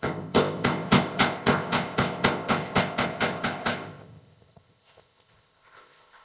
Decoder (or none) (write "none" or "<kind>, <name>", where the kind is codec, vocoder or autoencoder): codec, ZipCodec